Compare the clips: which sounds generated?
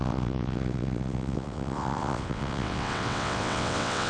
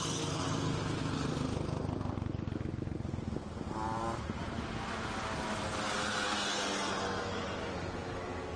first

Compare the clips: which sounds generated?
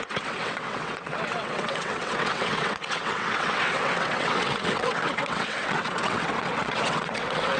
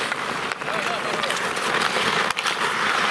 first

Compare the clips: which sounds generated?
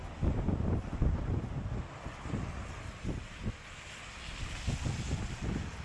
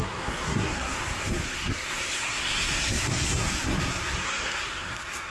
second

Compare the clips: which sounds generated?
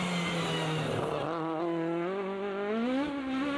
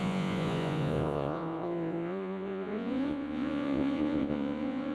second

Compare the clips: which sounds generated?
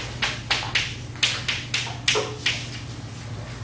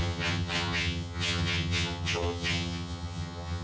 second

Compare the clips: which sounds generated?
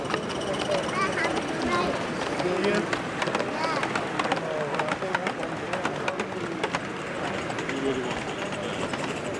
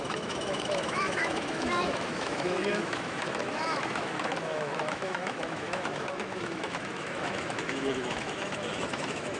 second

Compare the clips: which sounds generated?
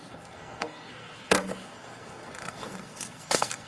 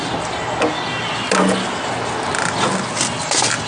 first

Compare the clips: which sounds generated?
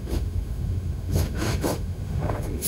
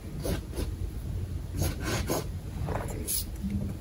first